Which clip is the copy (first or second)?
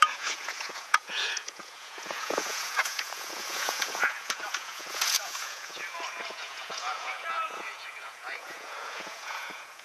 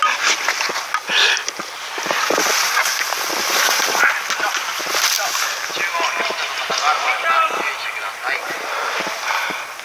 first